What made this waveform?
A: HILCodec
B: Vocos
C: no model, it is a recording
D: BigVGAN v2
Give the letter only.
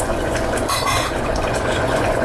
B